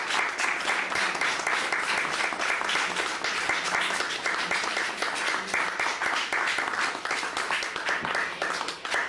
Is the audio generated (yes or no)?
no